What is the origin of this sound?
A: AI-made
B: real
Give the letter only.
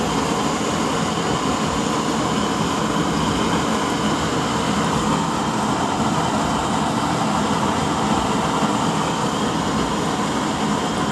B